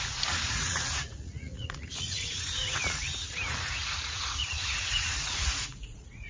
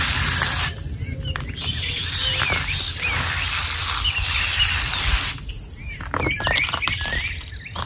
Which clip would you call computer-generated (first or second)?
first